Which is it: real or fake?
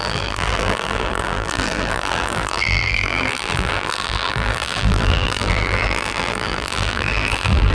fake